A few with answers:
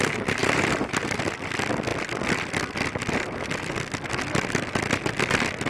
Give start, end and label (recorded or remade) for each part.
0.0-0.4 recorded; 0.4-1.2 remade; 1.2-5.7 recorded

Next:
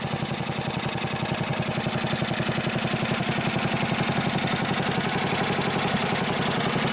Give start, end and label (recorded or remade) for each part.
0.0-6.9 recorded